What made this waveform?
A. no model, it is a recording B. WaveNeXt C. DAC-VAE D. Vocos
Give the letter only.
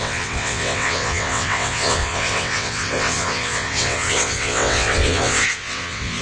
B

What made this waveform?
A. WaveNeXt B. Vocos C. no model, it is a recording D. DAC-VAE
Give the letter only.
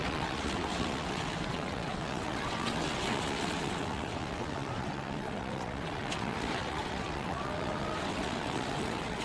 A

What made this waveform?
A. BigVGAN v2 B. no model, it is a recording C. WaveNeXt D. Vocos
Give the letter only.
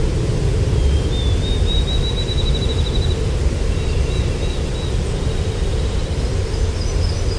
B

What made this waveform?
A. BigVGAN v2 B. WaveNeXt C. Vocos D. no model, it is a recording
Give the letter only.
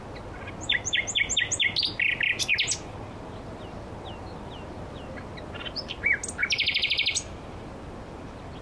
D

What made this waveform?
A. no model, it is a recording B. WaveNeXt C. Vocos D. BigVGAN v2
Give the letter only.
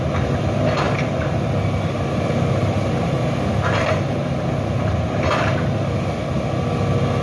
A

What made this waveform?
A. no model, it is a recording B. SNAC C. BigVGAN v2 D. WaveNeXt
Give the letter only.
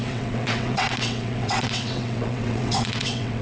D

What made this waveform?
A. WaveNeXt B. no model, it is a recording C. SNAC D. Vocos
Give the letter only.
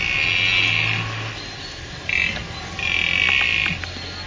B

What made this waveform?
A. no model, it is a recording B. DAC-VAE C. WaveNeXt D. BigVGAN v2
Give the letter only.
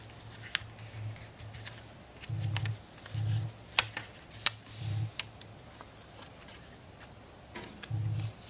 A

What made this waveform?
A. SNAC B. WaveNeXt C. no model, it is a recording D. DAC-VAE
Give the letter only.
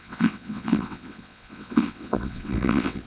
B